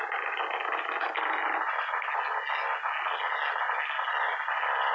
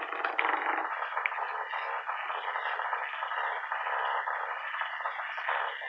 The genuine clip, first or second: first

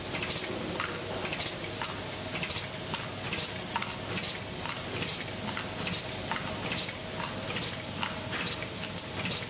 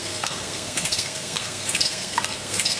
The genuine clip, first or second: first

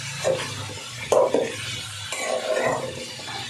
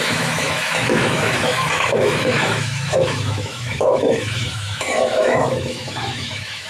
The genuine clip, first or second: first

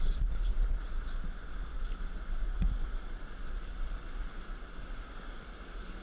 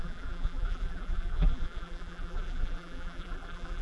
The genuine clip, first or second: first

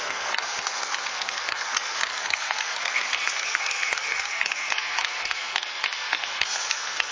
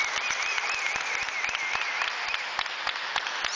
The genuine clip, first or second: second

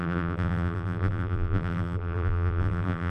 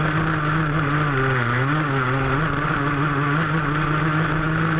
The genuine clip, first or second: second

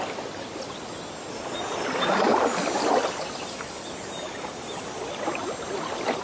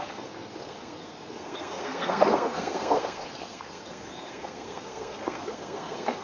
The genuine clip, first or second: first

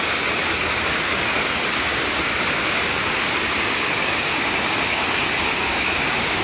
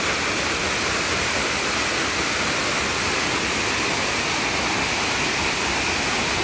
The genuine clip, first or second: second